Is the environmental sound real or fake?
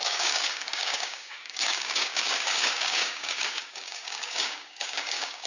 fake